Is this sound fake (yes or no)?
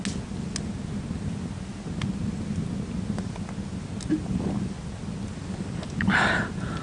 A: no